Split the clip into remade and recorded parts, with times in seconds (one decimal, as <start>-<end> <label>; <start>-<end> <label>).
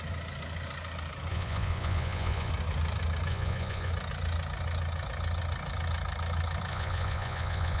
0.0-1.3 recorded; 1.3-2.5 remade; 2.5-3.3 recorded; 3.3-3.9 remade; 3.9-6.7 recorded; 6.7-7.8 remade